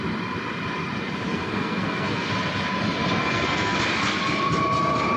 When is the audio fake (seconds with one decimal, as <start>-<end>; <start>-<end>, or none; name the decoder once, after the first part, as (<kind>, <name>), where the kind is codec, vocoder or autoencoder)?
1.3-2.3 (codec, SNAC); 3.2-3.8